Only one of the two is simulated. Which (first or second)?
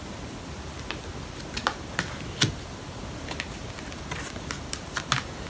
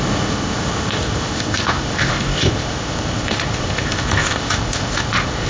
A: second